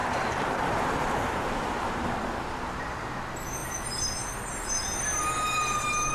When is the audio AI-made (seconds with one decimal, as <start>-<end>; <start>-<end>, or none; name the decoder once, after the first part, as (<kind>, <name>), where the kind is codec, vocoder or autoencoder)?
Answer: 0.0-2.8 (vocoder, BigVGAN v2)

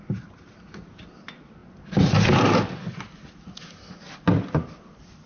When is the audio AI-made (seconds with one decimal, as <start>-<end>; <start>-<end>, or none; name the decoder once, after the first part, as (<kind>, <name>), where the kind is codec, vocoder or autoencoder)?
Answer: none

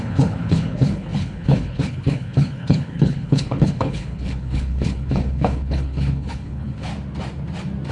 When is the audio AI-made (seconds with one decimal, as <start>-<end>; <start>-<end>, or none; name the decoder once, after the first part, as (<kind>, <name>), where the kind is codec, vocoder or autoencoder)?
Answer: 0.0-6.9 (codec, HILCodec)

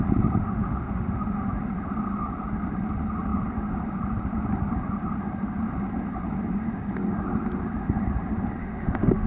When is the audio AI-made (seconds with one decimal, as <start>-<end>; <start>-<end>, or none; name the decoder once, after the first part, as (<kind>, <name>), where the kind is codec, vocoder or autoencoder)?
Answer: 0.4-1.5 (autoencoder, DAC-VAE); 8.6-9.3

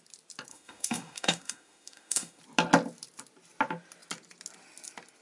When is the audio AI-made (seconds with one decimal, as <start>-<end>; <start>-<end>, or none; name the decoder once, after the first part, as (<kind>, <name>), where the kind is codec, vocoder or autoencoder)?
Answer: 0.5-2.4 (autoencoder, DAC-VAE)

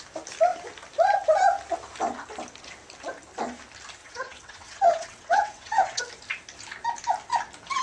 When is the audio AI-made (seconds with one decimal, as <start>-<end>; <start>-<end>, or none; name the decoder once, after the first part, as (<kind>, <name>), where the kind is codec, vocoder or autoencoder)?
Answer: 4.0-6.0 (vocoder, WaveNeXt)

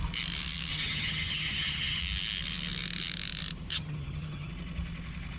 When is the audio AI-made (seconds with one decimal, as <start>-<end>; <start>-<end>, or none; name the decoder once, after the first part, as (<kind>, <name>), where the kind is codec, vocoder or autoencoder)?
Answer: 0.7-2.0 (vocoder, HiFi-GAN); 3.7-4.5

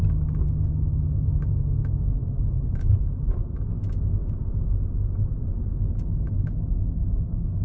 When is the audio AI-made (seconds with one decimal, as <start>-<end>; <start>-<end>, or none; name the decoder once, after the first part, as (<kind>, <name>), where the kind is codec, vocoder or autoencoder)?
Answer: 2.2-3.6 (vocoder, BigVGAN v2)